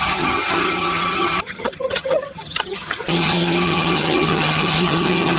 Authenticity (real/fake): fake